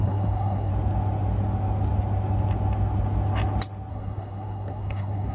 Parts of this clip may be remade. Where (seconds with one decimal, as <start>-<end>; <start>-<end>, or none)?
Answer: 0.0-0.7; 3.9-5.3